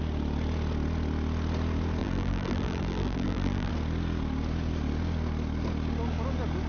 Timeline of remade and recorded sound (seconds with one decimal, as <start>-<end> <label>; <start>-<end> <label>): 0.0-2.0 recorded; 2.0-3.7 remade; 3.7-6.7 recorded